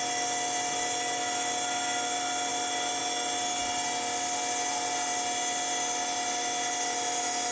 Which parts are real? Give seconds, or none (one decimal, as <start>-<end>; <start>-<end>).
0.0-7.5